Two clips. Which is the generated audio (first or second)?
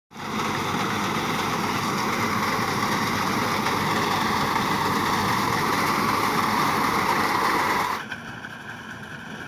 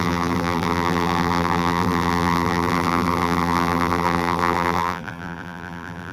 second